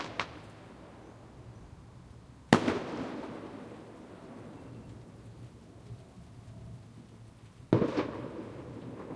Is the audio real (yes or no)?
yes